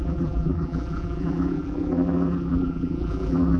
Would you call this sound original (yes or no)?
no